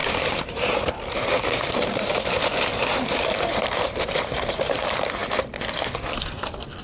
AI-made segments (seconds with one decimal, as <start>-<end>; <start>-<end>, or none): 0.0-5.2